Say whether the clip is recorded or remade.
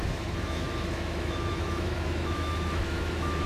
remade